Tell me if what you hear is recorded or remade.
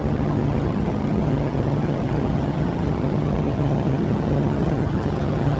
remade